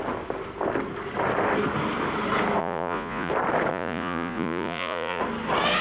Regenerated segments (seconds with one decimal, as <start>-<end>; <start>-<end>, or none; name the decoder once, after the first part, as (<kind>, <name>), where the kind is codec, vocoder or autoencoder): 2.6-3.3 (vocoder, Vocos); 3.7-5.2